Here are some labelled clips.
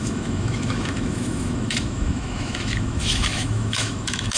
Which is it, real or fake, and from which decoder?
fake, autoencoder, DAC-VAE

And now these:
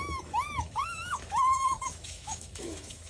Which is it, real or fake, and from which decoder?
fake, autoencoder, DAC-VAE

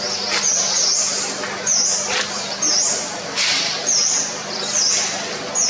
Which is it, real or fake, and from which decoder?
real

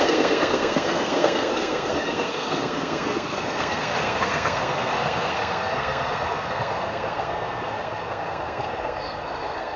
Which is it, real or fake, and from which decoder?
fake, codec, SNAC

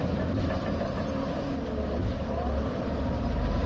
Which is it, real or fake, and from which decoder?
real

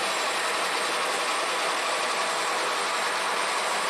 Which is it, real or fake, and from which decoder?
real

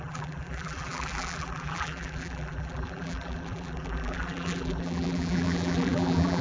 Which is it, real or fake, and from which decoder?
fake, vocoder, BigVGAN v2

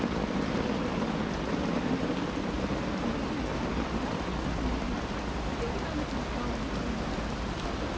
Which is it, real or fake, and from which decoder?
real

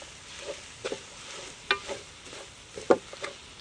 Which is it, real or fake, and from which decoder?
real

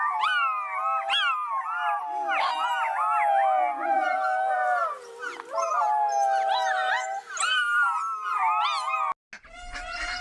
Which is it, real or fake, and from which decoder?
real